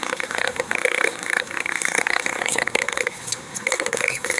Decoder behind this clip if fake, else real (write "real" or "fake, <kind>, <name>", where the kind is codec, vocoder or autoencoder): fake, codec, SNAC